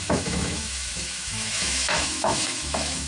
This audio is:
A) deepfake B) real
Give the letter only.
A